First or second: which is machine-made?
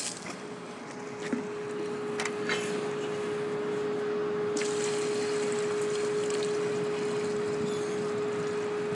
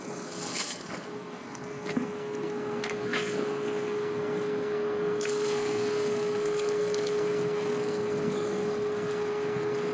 second